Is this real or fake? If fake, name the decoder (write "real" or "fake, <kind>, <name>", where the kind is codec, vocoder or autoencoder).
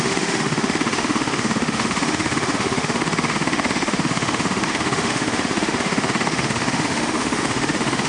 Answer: fake, autoencoder, DAC-VAE